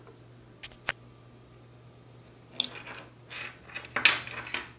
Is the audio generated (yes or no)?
no